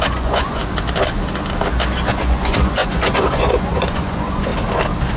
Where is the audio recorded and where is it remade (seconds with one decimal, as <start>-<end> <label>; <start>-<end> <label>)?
0.0-0.6 remade; 0.6-2.1 recorded; 2.1-4.5 remade; 4.5-5.2 recorded